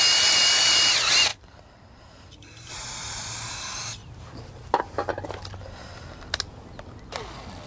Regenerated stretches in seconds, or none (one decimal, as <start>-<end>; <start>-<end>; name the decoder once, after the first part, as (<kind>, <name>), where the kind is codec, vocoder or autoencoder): 1.3-2.7 (vocoder, BigVGAN v2); 4.0-4.8